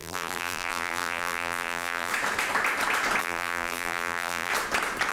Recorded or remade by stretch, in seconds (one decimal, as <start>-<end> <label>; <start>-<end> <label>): 0.0-2.1 remade; 2.1-3.2 recorded; 3.2-4.5 remade; 4.5-5.1 recorded